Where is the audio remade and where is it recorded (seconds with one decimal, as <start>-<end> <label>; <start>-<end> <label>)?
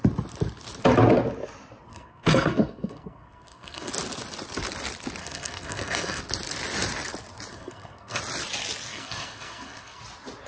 0.0-1.9 recorded; 1.9-3.9 remade; 3.9-5.2 recorded; 5.2-6.2 remade; 6.2-7.5 recorded; 7.5-8.2 remade; 8.2-8.9 recorded; 8.9-10.0 remade; 10.0-10.5 recorded